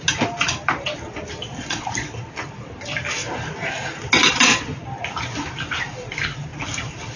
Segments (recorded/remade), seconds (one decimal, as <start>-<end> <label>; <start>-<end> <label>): 0.0-1.5 recorded; 1.5-2.1 remade; 2.1-7.2 recorded